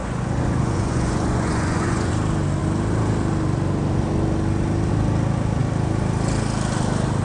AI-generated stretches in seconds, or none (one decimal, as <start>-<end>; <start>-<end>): 0.0-2.1